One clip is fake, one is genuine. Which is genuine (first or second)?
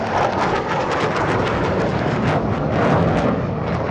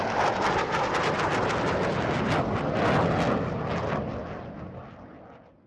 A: second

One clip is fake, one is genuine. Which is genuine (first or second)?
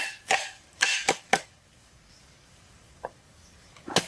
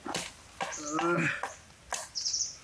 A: second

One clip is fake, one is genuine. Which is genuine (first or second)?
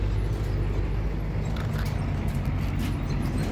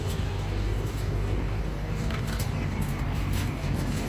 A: first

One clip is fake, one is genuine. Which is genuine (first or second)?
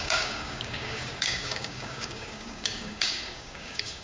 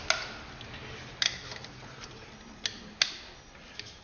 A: second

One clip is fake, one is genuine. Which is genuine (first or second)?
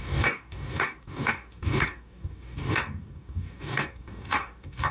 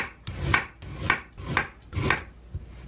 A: second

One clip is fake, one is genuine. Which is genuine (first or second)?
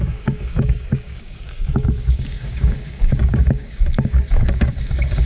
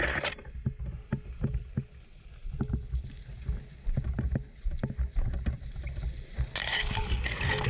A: second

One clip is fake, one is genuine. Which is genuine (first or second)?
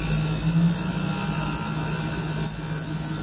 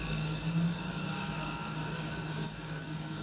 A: first